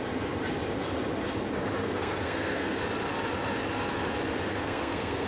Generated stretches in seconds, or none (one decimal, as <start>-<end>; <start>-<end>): 1.8-2.8; 4.5-5.3